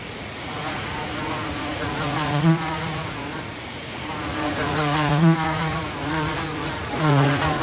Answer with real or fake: fake